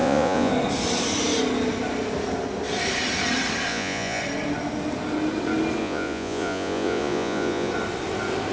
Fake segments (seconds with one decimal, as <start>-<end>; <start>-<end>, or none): 0.0-0.5; 3.7-4.2; 5.8-7.7

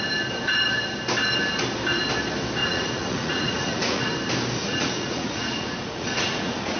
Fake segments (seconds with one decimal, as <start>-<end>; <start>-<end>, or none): 2.6-4.1; 4.6-6.8

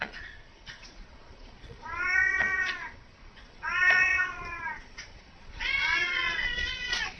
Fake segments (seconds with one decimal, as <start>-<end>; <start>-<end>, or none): 0.0-7.2

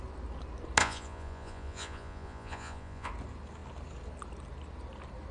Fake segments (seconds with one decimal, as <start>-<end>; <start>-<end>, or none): 0.8-3.1

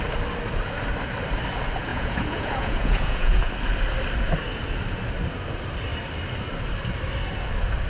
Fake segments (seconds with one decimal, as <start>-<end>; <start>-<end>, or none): 1.9-3.5